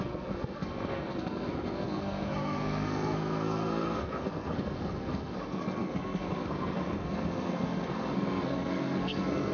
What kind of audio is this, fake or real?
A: fake